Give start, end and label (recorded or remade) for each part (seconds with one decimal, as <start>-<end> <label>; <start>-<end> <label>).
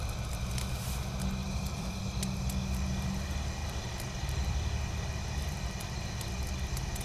0.0-1.4 recorded; 1.4-2.0 remade; 2.0-3.6 recorded; 3.6-6.2 remade; 6.2-7.0 recorded